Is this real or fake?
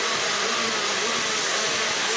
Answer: real